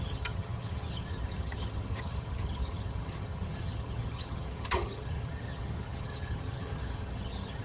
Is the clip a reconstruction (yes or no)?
yes